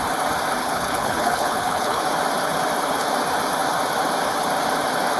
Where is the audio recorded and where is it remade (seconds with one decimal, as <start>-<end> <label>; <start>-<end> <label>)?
0.0-0.6 recorded; 0.6-2.0 remade; 2.0-5.2 recorded